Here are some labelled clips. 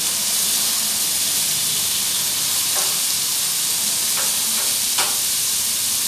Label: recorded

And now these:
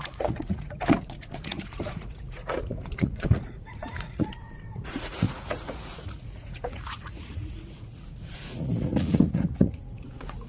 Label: remade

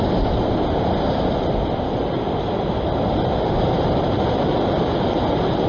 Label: recorded